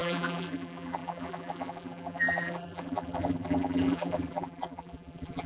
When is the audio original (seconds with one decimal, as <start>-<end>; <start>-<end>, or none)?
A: none